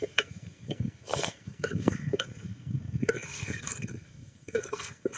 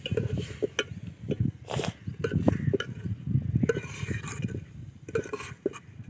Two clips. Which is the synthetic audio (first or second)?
first